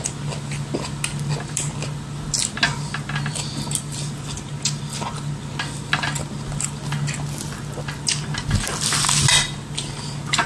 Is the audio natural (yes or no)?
yes